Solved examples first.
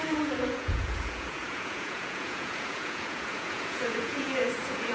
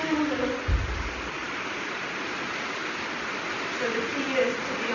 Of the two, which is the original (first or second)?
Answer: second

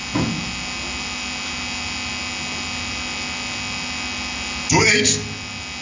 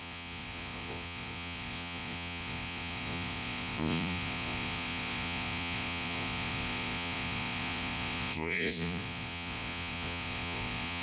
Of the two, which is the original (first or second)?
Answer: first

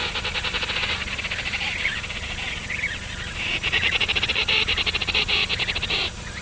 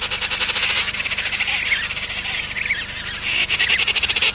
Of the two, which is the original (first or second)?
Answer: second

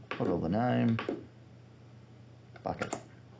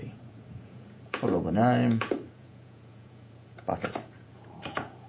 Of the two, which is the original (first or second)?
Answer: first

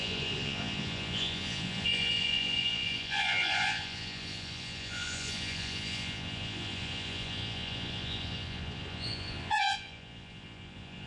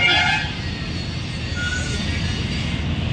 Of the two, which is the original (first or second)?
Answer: second